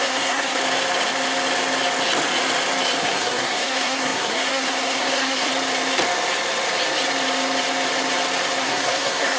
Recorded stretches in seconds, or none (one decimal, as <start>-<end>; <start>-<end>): 0.6-3.0; 5.5-8.6